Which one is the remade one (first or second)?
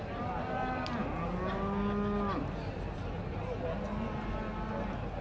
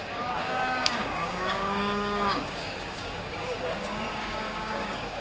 second